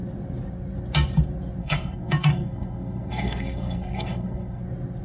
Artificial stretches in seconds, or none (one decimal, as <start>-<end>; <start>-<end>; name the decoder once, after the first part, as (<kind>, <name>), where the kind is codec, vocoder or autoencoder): 1.6-4.6 (codec, SNAC)